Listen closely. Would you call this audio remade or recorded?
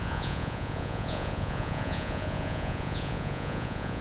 remade